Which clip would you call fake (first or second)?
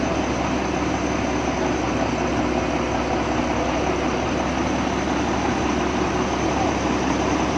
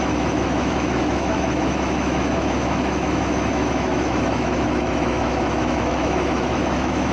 second